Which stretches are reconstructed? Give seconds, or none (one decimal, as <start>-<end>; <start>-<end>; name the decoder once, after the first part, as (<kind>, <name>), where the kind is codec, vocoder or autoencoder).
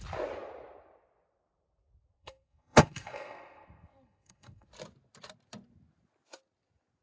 2.2-4.7 (codec, SNAC)